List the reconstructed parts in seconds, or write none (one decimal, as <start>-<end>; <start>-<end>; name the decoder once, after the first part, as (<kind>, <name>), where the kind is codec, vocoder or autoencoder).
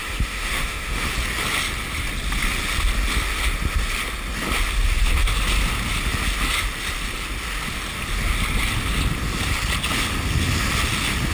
0.0-1.1 (autoencoder, DAC-VAE)